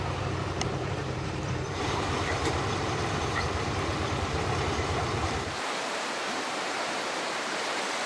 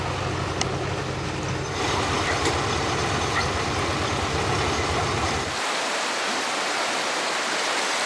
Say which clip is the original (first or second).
second